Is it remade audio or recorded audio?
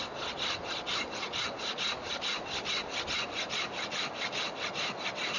recorded